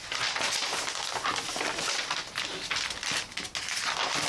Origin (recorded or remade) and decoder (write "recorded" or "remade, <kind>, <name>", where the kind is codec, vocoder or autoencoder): recorded